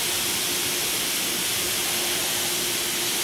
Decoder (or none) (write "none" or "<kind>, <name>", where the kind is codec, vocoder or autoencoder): none